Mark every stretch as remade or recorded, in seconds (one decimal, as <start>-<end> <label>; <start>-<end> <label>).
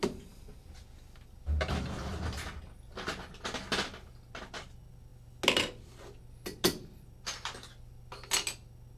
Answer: 0.0-9.0 recorded